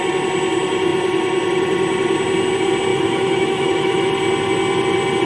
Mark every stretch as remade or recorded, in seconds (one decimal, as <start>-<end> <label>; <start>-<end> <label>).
0.0-2.9 recorded; 2.9-4.1 remade; 4.1-5.3 recorded

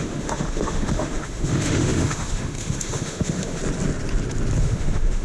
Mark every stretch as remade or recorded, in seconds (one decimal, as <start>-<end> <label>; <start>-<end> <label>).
0.0-3.6 remade; 3.6-4.6 recorded; 4.6-5.2 remade